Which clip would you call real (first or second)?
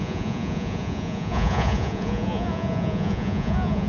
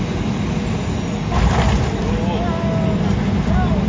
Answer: second